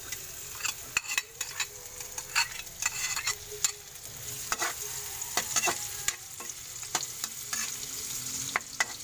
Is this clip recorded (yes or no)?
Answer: yes